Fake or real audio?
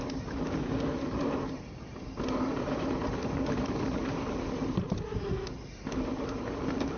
real